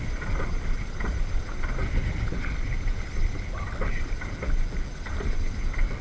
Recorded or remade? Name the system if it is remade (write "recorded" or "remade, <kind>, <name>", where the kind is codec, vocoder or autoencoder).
recorded